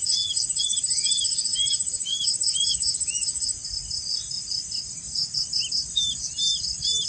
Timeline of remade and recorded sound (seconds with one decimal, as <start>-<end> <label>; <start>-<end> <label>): 0.0-3.6 remade; 3.6-7.1 recorded